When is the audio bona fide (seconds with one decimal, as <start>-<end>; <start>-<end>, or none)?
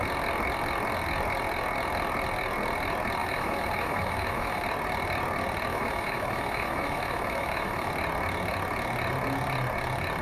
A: 0.0-3.2; 4.6-5.7; 7.9-10.2